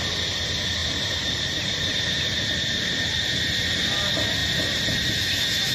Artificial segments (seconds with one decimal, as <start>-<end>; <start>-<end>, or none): 0.8-2.9; 4.4-5.1

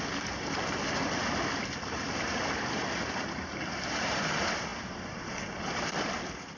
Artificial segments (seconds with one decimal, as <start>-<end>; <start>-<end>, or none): none

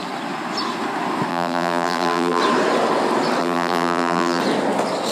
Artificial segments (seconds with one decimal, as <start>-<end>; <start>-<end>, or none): 1.3-2.4; 3.4-4.4

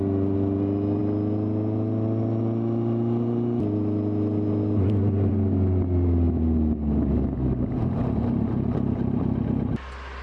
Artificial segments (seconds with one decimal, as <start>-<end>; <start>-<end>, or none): none

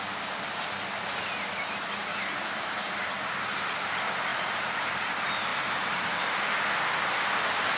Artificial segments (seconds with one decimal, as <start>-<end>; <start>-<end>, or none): 2.1-3.7; 4.3-5.1; 5.5-6.4